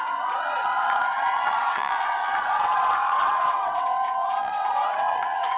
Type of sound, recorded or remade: remade